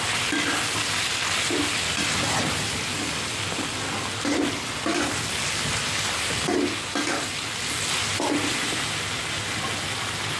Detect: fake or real real